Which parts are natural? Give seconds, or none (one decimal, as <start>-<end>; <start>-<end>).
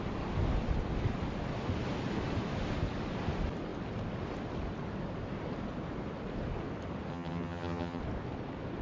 0.0-7.1; 8.0-8.8